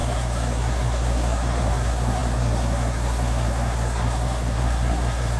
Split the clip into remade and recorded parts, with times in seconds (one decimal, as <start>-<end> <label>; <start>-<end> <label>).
0.0-5.4 remade